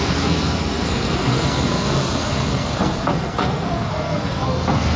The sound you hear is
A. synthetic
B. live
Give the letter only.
A